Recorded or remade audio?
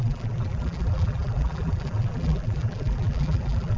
remade